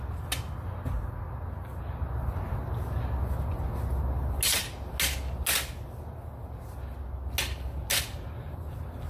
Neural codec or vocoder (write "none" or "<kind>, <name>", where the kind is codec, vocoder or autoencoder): none